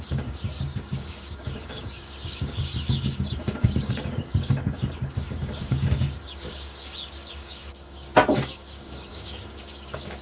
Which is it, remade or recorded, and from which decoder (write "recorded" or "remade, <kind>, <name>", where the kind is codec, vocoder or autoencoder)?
remade, codec, DAC